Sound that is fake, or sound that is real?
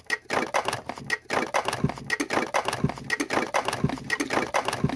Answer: real